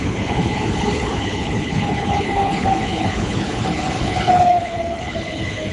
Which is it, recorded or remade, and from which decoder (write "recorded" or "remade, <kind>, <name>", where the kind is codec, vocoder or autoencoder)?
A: remade, codec, HILCodec